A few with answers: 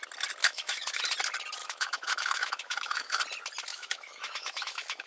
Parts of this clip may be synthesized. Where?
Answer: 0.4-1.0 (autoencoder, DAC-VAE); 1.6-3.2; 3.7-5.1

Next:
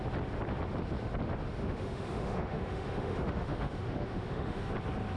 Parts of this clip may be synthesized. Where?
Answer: 1.6-4.7 (autoencoder, DAC-VAE)

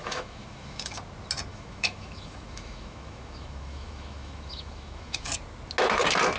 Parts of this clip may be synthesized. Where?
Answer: 0.0-1.0 (autoencoder, DAC-VAE); 1.5-5.3

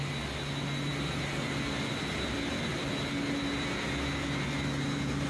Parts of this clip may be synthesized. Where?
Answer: none

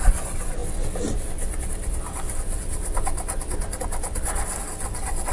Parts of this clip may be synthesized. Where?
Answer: none

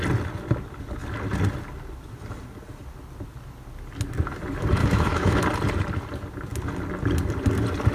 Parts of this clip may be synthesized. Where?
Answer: 4.8-5.4 (autoencoder, DAC-VAE)

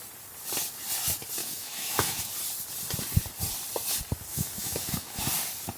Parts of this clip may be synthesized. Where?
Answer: 1.4-2.3 (autoencoder, DAC-VAE); 4.3-5.2

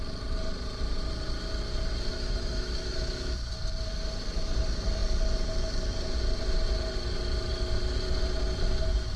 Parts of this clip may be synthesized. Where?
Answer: 2.1-3.3 (autoencoder, DAC-VAE)